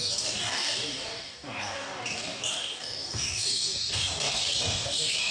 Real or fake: fake